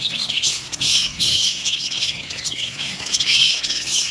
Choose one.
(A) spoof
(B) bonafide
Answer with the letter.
A